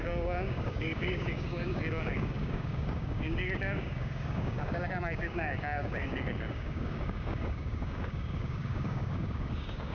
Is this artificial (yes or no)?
yes